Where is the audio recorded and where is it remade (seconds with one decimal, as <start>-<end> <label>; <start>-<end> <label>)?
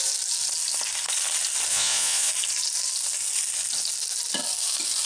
0.0-1.7 recorded; 1.7-2.3 remade; 2.3-5.1 recorded